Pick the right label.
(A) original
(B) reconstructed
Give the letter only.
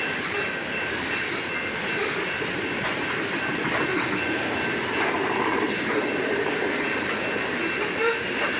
A